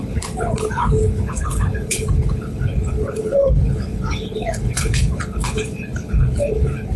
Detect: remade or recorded remade